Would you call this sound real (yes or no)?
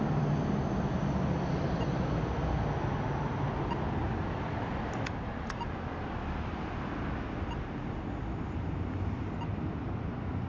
yes